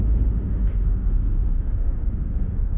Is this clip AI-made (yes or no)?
yes